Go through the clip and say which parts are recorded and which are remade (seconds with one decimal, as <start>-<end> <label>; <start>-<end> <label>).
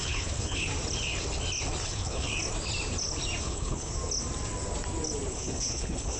0.0-0.7 remade; 0.7-1.8 recorded; 1.8-2.3 remade; 2.3-3.4 recorded; 3.4-3.9 remade; 3.9-5.3 recorded; 5.3-6.2 remade